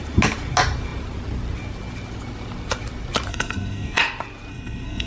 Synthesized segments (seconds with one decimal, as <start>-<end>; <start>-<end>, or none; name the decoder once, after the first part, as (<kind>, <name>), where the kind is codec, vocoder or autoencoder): 3.3-4.0 (codec, SNAC); 4.5-5.1